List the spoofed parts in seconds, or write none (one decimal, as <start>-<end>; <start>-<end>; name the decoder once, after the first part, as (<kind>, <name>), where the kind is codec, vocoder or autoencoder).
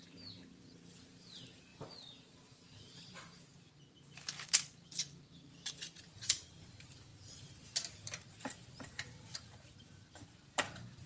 0.0-1.7 (vocoder, BigVGAN v2); 2.2-3.5; 6.0-11.1